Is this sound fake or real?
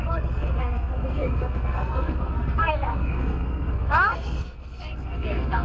fake